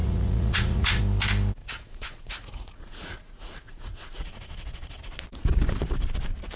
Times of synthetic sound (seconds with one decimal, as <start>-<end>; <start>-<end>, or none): 0.0-1.0; 1.6-5.0